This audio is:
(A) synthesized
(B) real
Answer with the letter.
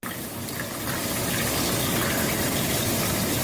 B